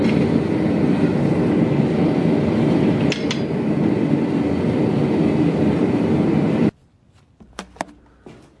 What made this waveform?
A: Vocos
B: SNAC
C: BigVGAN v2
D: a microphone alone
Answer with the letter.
D